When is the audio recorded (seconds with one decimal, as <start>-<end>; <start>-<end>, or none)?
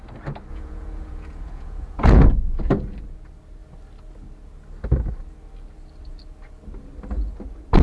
0.0-0.5; 2.3-7.8